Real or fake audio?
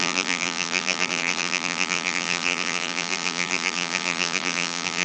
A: fake